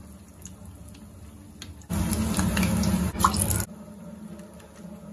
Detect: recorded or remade recorded